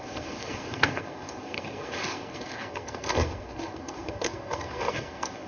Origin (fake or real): fake